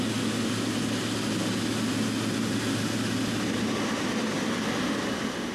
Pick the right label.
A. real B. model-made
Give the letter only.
A